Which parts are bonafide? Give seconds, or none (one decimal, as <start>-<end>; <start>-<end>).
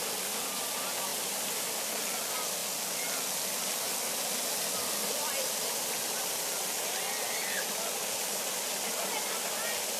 0.0-10.0